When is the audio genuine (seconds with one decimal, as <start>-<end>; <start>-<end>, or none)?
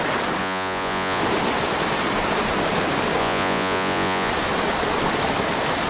0.0-0.4; 1.2-3.2; 4.3-5.9